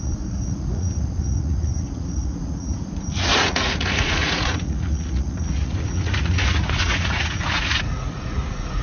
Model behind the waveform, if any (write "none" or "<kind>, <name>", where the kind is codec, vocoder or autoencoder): vocoder, Vocos